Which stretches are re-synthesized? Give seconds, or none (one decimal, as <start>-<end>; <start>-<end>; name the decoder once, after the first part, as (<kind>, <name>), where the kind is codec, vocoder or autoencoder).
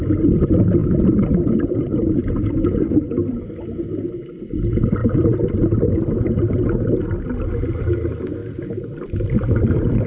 0.8-4.4 (vocoder, BigVGAN v2); 5.0-6.7; 8.4-10.1